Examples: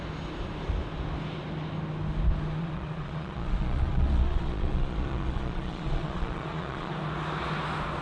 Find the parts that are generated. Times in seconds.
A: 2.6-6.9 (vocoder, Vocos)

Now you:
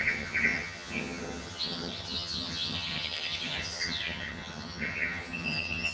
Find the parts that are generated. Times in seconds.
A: 0.0-5.9 (vocoder, HiFi-GAN)

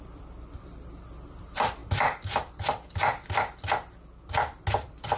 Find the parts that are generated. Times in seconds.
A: 0.0-1.8 (vocoder, BigVGAN v2); 2.6-3.0; 4.8-5.2

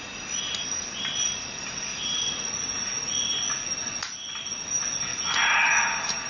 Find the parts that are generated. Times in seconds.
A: 1.9-2.5 (vocoder, Vocos); 5.1-5.8

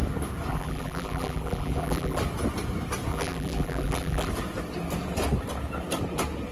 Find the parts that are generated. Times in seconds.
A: 0.5-2.2 (vocoder, BigVGAN v2); 3.1-4.3

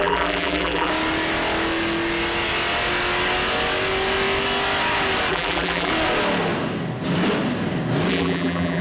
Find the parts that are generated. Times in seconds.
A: 0.0-0.9 (vocoder, BigVGAN v2); 5.3-5.9; 8.1-8.8

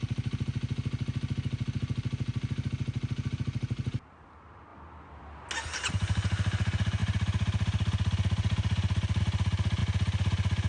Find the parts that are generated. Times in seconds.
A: none